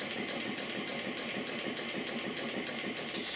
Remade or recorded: recorded